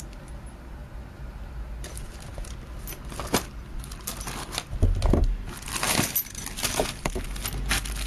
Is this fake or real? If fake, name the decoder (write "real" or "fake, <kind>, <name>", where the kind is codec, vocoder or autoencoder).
real